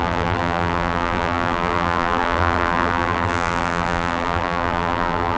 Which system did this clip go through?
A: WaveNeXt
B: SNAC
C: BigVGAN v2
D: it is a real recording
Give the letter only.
C